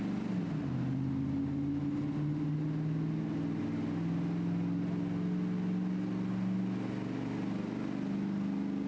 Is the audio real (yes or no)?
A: yes